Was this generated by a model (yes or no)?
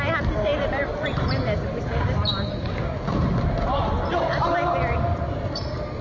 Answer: no